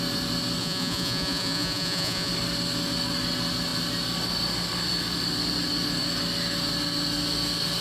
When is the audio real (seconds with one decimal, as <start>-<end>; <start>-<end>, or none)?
0.0-0.6; 2.3-7.8